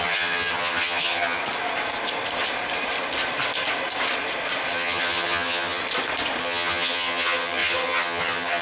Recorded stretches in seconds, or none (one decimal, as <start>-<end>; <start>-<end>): 1.4-4.7; 5.8-6.4